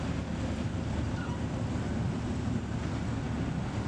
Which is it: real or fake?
real